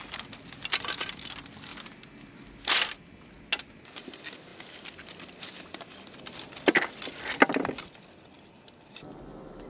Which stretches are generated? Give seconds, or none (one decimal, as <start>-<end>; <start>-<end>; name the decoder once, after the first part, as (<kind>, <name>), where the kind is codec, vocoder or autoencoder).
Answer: none

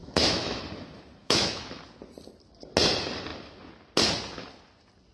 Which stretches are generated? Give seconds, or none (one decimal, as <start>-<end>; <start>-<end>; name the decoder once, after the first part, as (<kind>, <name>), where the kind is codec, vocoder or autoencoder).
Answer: 0.0-0.6 (autoencoder, DAC-VAE); 1.2-1.8

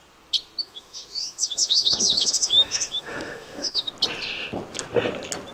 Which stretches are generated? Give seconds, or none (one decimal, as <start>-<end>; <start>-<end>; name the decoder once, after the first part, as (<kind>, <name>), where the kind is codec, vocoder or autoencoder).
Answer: 0.6-3.9 (autoencoder, DAC-VAE)

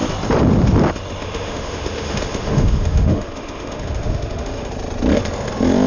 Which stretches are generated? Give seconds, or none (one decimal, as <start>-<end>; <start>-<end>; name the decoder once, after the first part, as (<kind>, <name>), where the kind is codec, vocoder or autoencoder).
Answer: 1.2-4.7 (autoencoder, DAC-VAE)

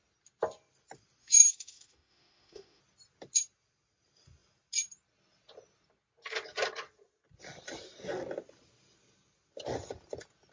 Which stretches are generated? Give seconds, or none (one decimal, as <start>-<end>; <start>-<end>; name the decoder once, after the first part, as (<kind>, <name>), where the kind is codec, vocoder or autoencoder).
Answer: 1.2-2.8 (autoencoder, DAC-VAE)

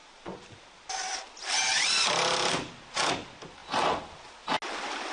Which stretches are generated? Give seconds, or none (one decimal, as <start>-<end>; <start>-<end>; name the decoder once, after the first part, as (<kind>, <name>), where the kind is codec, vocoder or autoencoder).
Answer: none

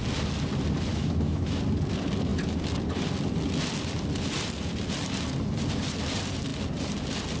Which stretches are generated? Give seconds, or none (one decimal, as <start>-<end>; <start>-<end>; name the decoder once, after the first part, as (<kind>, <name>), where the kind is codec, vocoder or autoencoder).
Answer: 0.9-1.6 (autoencoder, DAC-VAE)

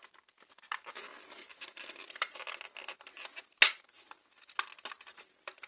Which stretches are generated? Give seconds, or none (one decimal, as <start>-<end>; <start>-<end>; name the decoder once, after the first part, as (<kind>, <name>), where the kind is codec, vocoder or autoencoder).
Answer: none